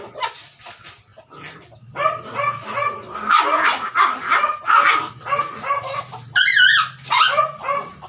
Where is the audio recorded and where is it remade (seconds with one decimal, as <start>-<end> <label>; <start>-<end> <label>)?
0.0-8.1 recorded